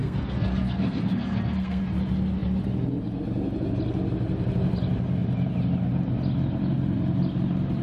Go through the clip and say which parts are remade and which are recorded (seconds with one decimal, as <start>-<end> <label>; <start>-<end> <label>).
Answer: 0.0-1.8 remade; 1.8-7.8 recorded